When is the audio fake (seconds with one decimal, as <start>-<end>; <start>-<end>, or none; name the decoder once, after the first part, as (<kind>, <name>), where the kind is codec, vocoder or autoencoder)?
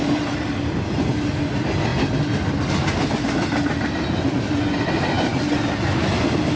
none